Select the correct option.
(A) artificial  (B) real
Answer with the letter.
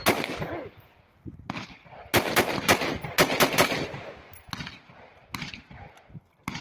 B